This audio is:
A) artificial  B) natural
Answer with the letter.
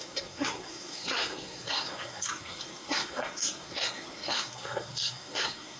A